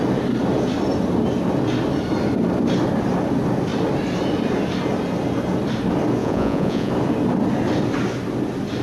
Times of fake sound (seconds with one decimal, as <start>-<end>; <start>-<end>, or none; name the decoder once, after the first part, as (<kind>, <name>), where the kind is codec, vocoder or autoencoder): 6.2-6.9 (vocoder, Vocos)